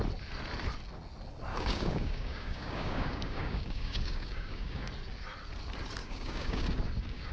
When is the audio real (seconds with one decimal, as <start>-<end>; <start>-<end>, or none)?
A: 0.0-1.5; 4.9-6.0